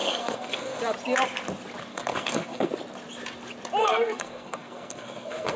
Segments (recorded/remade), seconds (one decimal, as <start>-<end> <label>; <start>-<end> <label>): 0.0-0.8 remade; 0.8-1.9 recorded; 1.9-2.7 remade; 2.7-3.8 recorded; 3.8-5.6 remade